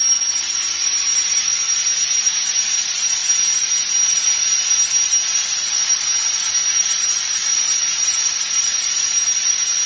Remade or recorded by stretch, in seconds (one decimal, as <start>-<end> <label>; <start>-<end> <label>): 0.0-9.9 recorded